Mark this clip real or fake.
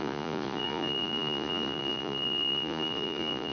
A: fake